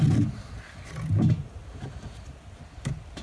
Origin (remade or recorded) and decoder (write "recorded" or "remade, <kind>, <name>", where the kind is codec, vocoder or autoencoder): recorded